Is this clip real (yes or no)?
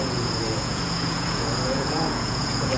no